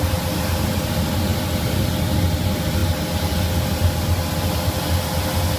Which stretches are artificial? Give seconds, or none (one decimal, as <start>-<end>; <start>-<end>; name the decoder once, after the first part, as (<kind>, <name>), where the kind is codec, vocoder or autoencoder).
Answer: 1.3-2.1 (vocoder, BigVGAN v2)